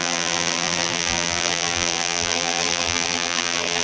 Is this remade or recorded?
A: remade